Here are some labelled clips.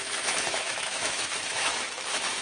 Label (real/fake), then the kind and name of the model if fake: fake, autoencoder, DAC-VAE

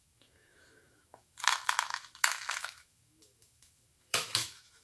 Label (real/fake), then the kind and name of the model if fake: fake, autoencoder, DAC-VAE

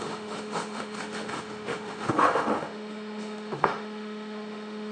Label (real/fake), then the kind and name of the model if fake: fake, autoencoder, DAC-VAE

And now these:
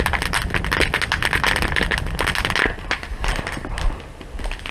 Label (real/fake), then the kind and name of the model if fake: real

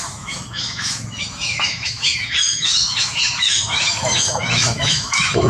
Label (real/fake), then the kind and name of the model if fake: fake, autoencoder, DAC-VAE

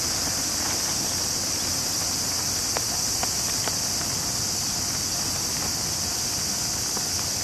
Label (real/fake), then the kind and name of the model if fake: real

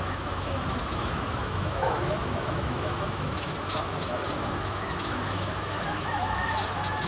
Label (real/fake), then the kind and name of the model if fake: fake, autoencoder, DAC-VAE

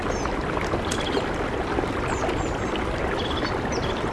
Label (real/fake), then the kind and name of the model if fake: real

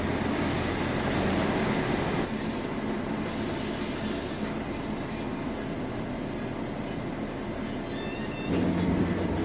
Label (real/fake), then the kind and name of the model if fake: real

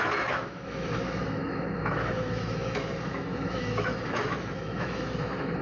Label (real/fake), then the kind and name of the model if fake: fake, autoencoder, DAC-VAE